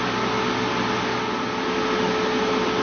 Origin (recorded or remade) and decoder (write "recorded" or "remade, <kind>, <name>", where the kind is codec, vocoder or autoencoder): recorded